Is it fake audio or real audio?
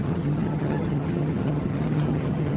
fake